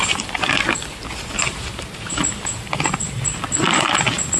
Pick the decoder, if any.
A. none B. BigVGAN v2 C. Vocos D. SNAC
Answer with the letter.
A